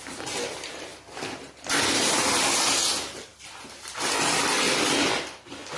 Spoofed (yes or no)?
no